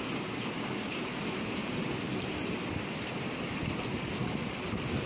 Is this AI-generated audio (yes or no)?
no